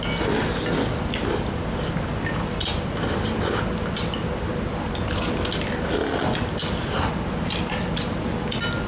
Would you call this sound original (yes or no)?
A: yes